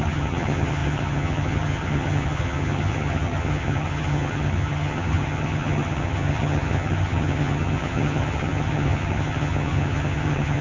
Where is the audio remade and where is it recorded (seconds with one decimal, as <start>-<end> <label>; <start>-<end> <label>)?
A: 0.0-10.6 remade